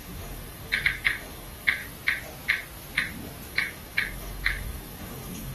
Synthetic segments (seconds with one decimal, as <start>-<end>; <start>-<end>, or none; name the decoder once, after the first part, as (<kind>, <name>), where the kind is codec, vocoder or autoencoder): 0.0-1.8 (codec, DAC); 3.5-5.5

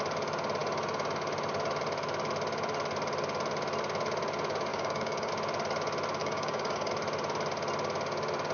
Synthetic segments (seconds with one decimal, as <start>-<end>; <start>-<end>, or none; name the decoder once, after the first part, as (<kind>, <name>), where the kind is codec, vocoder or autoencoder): 4.7-5.3 (codec, DAC); 6.2-6.9

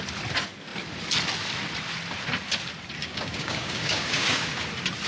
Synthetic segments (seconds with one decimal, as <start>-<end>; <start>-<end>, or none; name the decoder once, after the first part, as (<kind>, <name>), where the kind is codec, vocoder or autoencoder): 3.0-4.5 (codec, DAC)

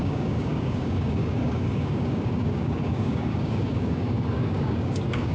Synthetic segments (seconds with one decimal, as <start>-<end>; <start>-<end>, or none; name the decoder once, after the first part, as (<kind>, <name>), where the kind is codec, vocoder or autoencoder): 0.0-5.3 (codec, DAC)

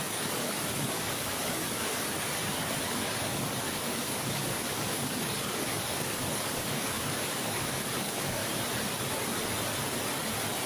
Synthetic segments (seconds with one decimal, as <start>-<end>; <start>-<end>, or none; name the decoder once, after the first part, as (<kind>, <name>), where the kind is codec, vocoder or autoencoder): 0.0-8.4 (codec, DAC)

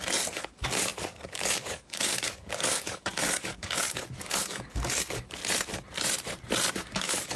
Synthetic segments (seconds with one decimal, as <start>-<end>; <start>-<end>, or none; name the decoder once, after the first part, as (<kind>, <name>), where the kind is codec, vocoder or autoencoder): 0.0-5.4 (codec, DAC); 6.7-7.4

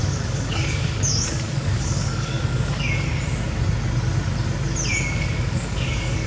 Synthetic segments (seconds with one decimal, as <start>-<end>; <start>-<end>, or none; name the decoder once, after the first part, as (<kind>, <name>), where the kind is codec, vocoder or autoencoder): 0.0-3.2 (codec, DAC); 4.9-6.3

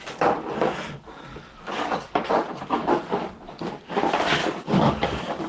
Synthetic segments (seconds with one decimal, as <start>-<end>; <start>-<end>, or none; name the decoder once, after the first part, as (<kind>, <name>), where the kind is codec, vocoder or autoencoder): 1.3-2.3 (codec, DAC); 2.8-3.8; 4.4-5.5